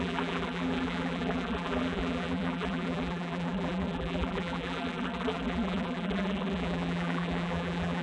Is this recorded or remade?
remade